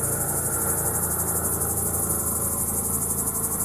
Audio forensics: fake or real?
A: real